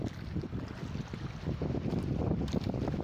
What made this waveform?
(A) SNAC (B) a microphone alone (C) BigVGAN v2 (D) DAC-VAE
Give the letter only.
B